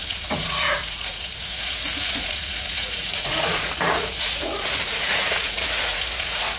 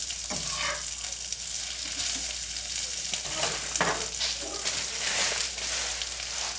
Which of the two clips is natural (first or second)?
second